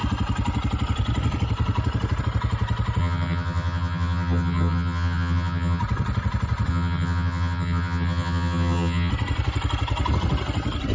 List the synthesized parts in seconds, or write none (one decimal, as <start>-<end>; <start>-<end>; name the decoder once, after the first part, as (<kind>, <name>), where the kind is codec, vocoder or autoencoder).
3.0-5.8 (vocoder, HiFi-GAN); 6.7-9.1